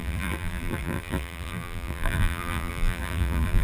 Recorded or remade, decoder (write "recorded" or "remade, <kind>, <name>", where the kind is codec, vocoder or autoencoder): remade, vocoder, BigVGAN v2